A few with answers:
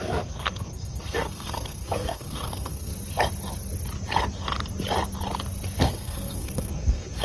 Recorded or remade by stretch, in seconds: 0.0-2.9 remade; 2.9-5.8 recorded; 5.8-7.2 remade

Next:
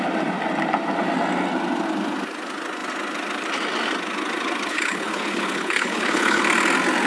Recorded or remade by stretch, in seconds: 0.0-4.7 recorded; 4.7-6.4 remade; 6.4-7.1 recorded